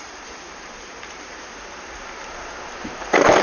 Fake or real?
fake